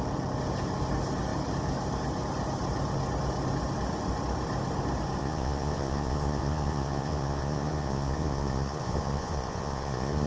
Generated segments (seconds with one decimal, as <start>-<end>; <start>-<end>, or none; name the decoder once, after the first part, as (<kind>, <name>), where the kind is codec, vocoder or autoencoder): 5.2-10.3 (vocoder, Vocos)